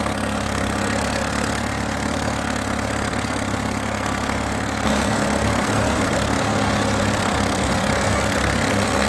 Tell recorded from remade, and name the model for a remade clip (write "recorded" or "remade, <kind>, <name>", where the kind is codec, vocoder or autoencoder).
remade, codec, SNAC